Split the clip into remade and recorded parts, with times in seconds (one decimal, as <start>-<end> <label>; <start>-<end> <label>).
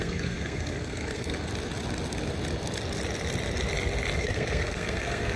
0.0-1.3 remade; 1.3-4.2 recorded; 4.2-5.4 remade